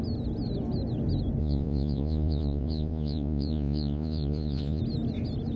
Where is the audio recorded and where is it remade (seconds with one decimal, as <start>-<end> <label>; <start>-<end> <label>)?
0.0-1.4 recorded; 1.4-4.8 remade; 4.8-5.6 recorded